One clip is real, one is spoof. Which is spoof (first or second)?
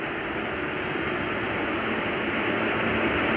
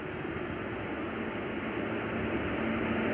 first